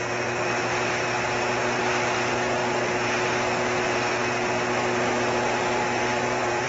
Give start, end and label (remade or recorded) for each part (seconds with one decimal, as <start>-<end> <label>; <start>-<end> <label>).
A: 0.0-6.7 recorded